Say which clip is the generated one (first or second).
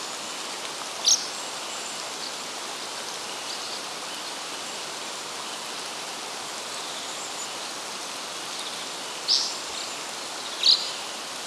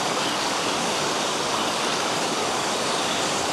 second